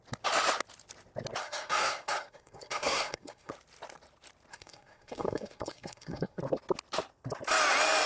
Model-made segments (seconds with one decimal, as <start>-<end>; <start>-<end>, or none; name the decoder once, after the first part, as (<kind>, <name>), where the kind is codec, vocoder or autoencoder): 1.4-3.5 (codec, SNAC); 4.5-6.4